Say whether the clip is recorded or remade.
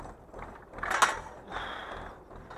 recorded